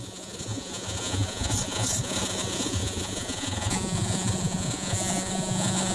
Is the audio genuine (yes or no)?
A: no